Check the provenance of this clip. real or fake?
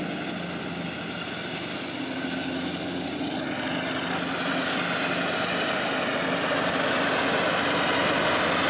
real